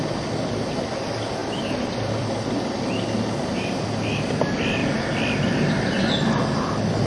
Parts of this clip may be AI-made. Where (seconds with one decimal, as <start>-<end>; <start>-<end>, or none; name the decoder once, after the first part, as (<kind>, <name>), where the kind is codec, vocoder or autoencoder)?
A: 1.4-2.8 (vocoder, BigVGAN v2)